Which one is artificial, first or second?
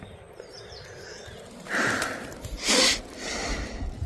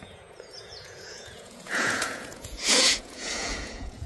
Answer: second